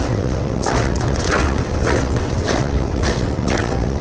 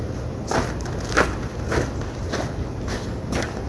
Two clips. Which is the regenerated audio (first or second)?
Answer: first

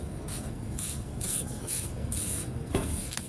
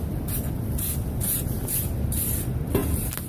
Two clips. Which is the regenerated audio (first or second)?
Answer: first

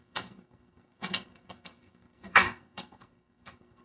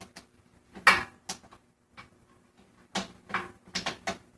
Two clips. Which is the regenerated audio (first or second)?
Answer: first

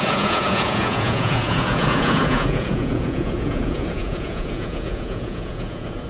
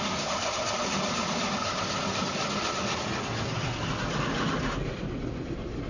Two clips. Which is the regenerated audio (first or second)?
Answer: first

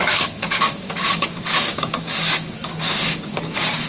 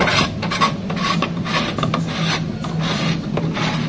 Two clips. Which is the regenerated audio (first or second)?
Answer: first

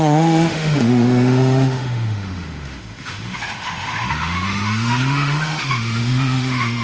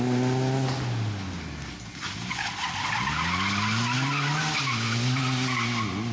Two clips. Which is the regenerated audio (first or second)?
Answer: first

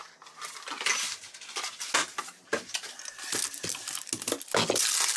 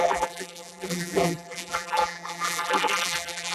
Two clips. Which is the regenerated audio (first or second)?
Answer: second